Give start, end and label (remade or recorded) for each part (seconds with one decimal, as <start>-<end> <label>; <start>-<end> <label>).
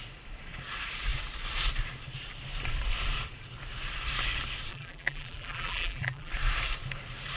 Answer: 0.0-4.7 recorded; 4.7-6.3 remade; 6.3-7.4 recorded